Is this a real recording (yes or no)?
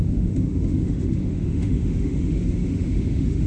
no